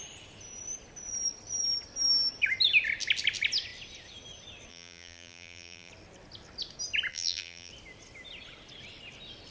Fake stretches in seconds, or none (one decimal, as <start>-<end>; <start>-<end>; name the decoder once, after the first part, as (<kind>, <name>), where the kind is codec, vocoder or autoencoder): 4.7-5.9 (vocoder, BigVGAN v2); 7.1-7.7